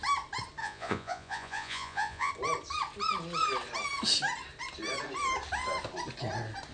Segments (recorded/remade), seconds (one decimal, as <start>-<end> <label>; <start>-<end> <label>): 0.0-0.6 recorded; 0.6-2.3 remade; 2.3-6.7 recorded